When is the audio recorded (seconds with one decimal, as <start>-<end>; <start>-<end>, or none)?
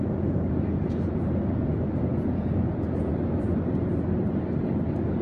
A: 3.1-5.2